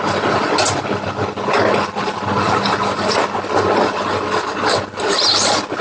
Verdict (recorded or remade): recorded